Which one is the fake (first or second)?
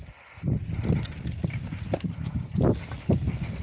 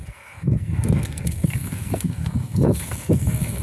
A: second